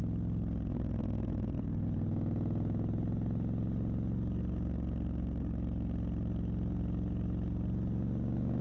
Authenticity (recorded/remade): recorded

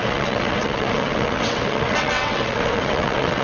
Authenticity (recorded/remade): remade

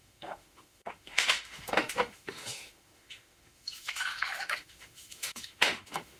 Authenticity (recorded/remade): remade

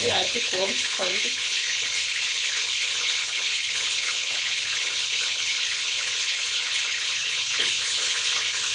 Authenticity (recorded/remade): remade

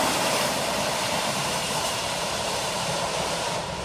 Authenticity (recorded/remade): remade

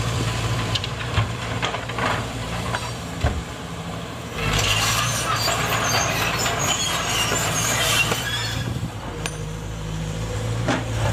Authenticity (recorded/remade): remade